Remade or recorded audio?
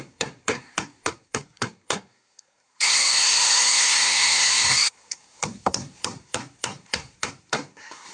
remade